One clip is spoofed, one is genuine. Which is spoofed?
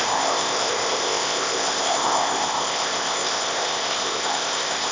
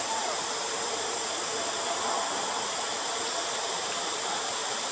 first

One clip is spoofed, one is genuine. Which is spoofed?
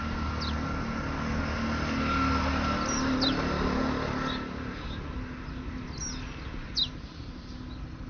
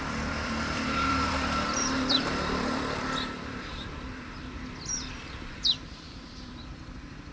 second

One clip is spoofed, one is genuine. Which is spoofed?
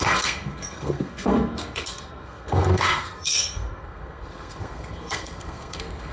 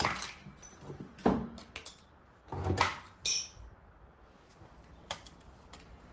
first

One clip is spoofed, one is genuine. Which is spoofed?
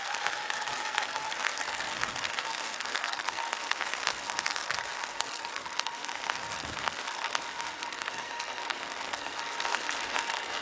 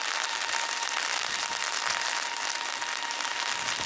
first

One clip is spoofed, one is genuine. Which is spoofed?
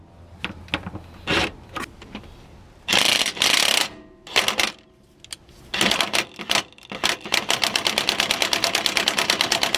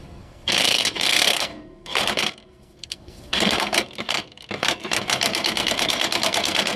second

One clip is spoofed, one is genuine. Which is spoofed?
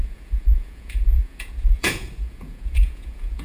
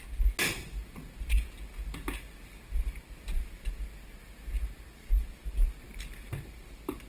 first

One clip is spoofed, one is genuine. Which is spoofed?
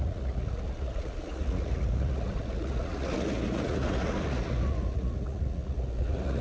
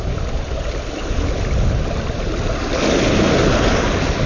first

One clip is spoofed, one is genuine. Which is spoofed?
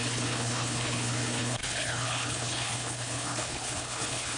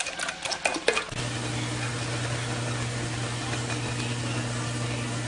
first